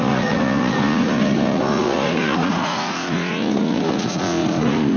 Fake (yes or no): yes